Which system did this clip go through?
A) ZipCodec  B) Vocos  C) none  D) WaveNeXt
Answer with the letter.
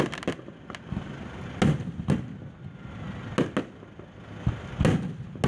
C